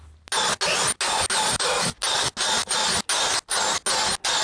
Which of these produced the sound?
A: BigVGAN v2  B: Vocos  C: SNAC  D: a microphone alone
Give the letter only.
D